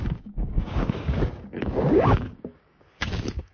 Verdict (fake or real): fake